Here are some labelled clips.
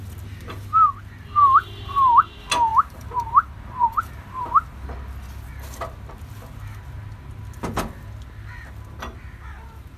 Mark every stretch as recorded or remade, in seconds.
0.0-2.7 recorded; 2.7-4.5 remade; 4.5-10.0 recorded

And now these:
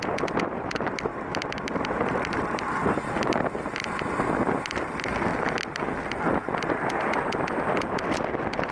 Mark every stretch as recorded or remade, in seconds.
0.0-1.1 recorded; 1.1-2.9 remade; 2.9-8.7 recorded

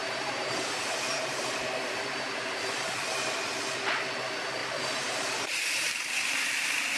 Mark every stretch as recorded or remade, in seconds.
0.0-3.5 remade; 3.5-4.6 recorded; 4.6-7.0 remade

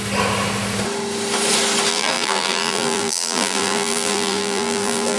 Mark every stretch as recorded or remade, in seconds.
0.0-1.9 recorded; 1.9-5.2 remade

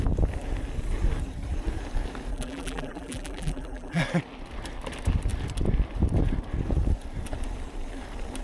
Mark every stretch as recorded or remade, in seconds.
0.0-2.3 recorded; 2.3-4.0 remade; 4.0-8.4 recorded

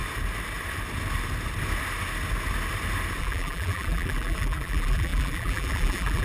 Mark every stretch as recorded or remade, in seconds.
0.0-3.2 recorded; 3.2-6.2 remade

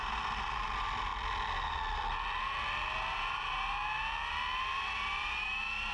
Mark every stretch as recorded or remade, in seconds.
0.0-1.1 remade; 1.1-4.6 recorded; 4.6-5.9 remade